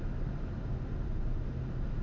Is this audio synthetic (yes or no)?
no